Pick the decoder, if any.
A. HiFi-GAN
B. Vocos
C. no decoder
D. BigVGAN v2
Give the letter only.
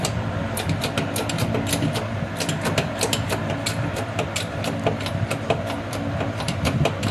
C